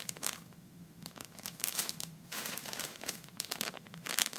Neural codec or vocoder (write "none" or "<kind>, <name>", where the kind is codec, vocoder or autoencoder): autoencoder, DAC-VAE